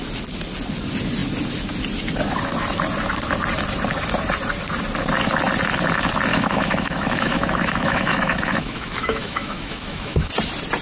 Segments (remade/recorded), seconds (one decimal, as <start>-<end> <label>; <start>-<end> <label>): 0.0-6.3 recorded; 6.3-10.3 remade; 10.3-10.8 recorded